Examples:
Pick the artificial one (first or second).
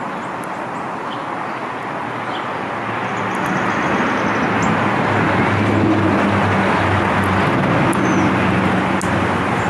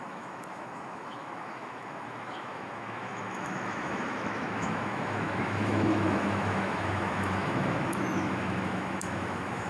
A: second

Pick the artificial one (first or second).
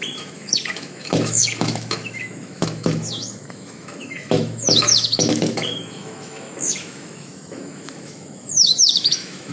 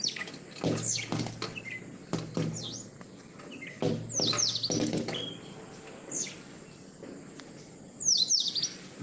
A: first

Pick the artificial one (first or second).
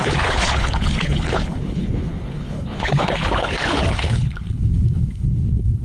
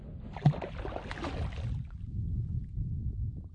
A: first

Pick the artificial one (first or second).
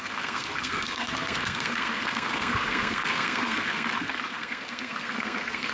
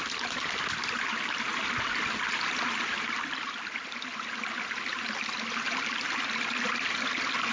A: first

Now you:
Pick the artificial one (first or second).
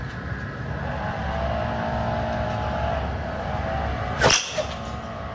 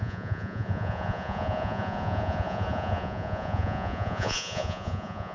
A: second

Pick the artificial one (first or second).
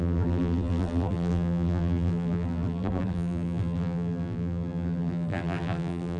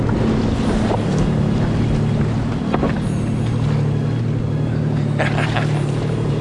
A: first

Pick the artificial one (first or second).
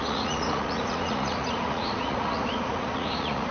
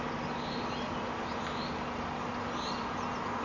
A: first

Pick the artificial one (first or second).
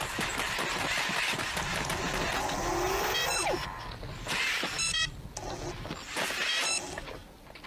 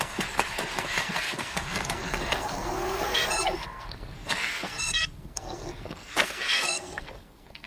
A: second